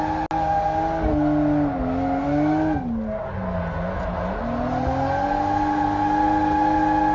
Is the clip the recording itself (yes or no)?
yes